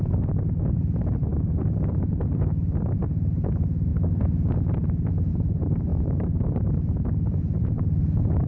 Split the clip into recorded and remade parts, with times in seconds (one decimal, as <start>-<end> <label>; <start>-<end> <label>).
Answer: 0.0-3.9 remade; 3.9-5.3 recorded; 5.3-8.5 remade